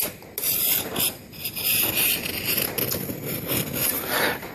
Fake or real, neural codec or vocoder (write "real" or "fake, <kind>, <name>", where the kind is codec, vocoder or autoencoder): real